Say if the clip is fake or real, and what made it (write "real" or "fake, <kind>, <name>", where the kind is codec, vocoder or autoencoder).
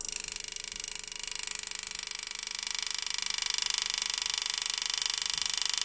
real